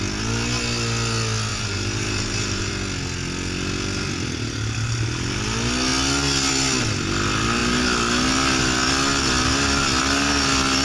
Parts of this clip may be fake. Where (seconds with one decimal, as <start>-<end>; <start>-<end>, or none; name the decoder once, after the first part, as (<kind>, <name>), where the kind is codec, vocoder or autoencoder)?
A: 1.5-2.7 (vocoder, BigVGAN v2)